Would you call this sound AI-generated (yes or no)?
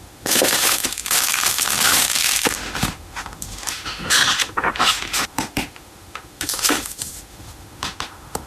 yes